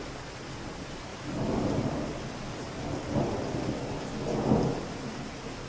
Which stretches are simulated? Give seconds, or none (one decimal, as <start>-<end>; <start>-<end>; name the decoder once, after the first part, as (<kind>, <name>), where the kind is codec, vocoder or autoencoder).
none